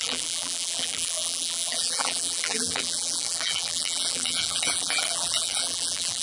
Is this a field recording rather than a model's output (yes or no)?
no